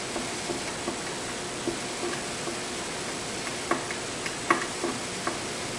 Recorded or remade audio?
recorded